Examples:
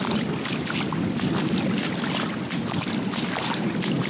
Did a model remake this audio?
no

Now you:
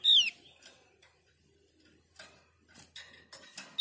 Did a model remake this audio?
no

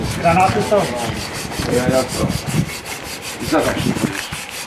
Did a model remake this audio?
no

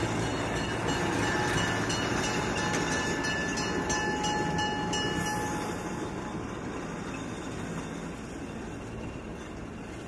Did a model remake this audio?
no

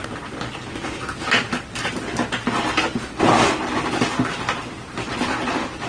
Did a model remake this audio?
no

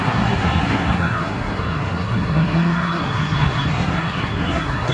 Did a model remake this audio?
yes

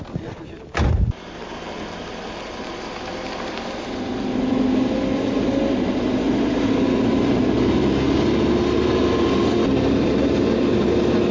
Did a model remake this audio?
no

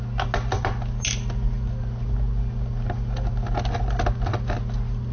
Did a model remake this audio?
no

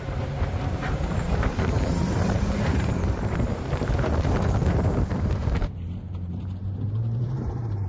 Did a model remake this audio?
yes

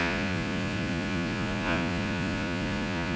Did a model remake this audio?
yes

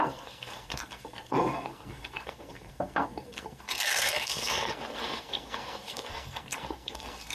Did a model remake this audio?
yes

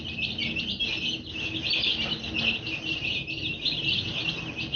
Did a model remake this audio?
no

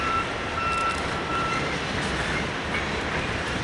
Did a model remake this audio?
yes